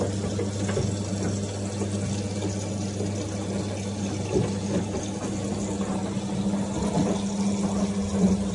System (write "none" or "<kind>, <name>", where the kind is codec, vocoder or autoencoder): none